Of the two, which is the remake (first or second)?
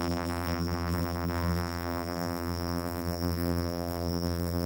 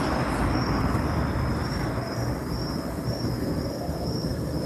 first